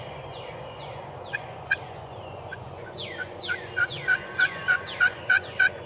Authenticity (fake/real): fake